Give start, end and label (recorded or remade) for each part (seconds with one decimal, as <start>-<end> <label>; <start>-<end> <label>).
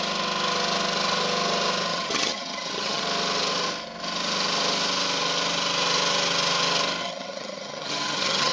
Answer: 0.0-1.9 recorded; 1.9-3.0 remade; 3.0-7.0 recorded; 7.0-8.5 remade